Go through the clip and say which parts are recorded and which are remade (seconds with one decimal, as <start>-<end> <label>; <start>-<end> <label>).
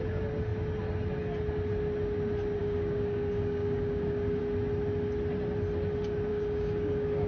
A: 0.0-2.6 recorded; 2.6-4.4 remade; 4.4-6.3 recorded; 6.3-7.3 remade